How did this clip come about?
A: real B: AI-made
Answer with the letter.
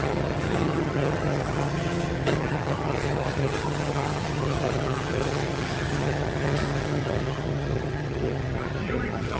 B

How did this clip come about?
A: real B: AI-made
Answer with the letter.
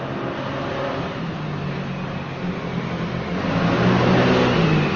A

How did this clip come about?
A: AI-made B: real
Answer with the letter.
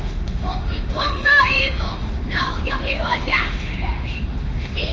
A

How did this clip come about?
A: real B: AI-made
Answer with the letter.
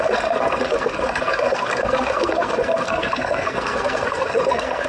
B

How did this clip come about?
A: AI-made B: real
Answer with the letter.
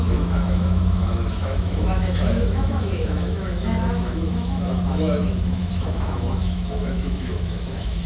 A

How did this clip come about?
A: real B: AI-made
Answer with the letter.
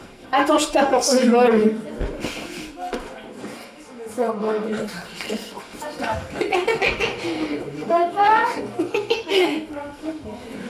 B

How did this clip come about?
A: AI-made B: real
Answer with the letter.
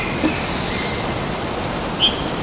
B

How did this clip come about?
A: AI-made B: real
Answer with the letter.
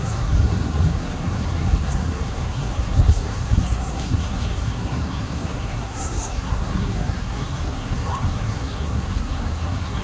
A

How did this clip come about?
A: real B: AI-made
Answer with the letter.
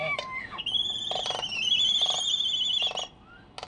A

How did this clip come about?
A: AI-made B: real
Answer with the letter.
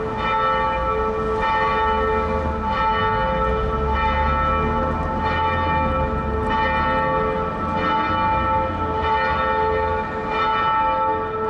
B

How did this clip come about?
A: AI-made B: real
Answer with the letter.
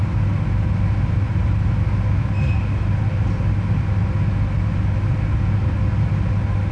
B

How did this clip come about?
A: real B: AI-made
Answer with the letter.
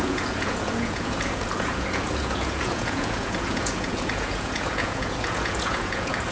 B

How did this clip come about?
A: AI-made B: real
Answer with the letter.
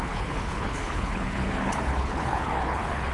A